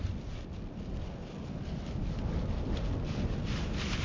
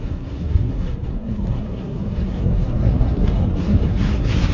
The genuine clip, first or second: first